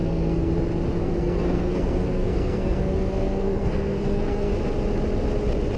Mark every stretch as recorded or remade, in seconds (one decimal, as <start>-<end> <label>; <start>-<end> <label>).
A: 0.0-0.5 remade; 0.5-1.0 recorded; 1.0-4.5 remade; 4.5-5.8 recorded